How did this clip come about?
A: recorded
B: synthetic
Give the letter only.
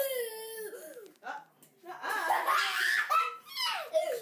A